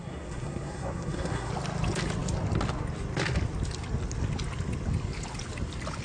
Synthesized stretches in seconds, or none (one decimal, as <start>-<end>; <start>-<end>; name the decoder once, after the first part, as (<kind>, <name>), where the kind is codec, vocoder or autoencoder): 0.0-1.5 (codec, SNAC)